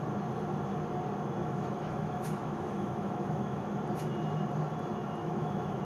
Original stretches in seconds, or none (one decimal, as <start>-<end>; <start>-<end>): 0.0-1.4; 3.7-5.2